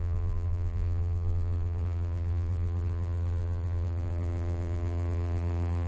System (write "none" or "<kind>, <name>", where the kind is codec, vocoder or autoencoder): vocoder, BigVGAN v2